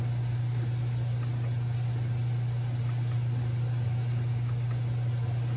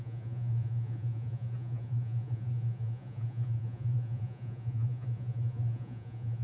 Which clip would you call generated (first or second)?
second